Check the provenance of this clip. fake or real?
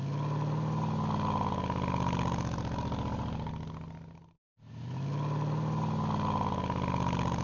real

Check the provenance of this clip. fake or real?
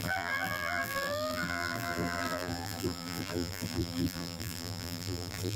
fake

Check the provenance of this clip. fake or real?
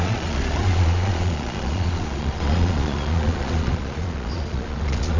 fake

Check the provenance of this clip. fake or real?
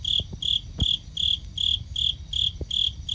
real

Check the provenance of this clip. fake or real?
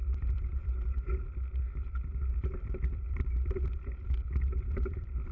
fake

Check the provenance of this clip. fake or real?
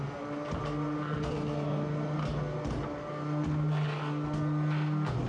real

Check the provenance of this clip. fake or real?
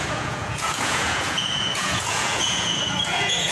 fake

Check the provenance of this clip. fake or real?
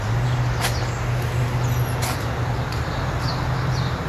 real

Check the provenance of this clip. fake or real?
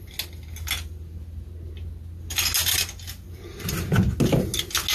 real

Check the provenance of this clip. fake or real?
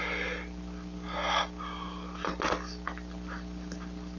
real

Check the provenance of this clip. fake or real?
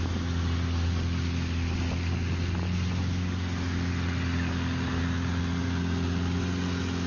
real